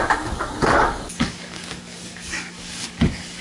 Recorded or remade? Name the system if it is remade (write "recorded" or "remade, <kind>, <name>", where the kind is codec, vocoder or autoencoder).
remade, codec, DAC